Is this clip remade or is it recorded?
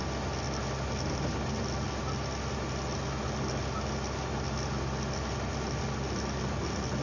recorded